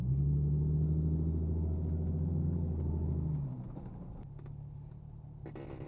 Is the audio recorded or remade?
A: recorded